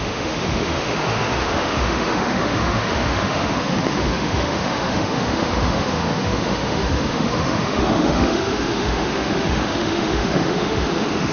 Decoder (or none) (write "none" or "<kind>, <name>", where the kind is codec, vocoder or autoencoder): autoencoder, DAC-VAE